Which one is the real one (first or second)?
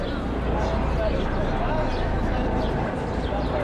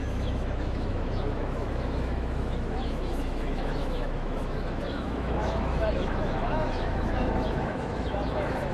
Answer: first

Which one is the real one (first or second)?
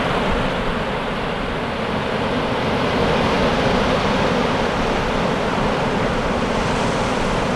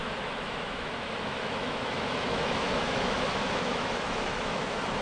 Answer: first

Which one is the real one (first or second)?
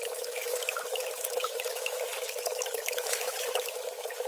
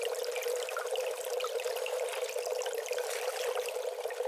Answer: second